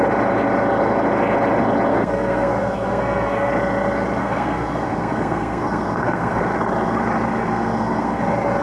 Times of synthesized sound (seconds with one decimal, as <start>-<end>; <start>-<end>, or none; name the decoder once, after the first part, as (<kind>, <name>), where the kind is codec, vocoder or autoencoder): 1.9-3.5 (codec, SNAC); 4.2-6.4; 7.4-8.2